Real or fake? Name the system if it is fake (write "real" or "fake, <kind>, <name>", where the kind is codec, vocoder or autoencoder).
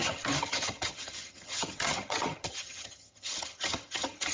fake, vocoder, HiFi-GAN